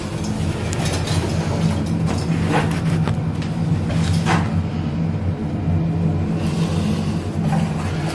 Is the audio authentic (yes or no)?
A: yes